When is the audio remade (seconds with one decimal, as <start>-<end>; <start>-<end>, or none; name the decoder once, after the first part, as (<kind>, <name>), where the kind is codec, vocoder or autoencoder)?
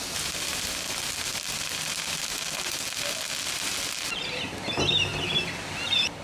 none